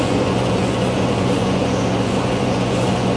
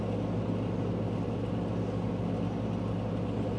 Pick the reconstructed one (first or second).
first